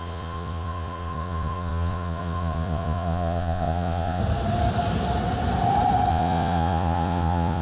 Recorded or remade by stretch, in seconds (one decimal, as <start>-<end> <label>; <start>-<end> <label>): 0.0-4.2 remade; 4.2-6.1 recorded; 6.1-7.6 remade